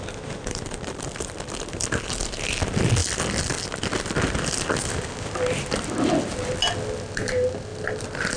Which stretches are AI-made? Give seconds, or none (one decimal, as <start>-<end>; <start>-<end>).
none